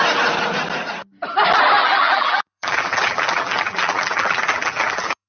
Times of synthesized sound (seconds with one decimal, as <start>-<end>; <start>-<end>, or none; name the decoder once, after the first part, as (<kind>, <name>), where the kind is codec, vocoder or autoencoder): 1.8-5.3 (vocoder, BigVGAN v2)